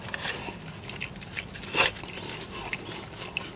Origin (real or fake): real